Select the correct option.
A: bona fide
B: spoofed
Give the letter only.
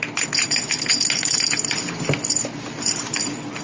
A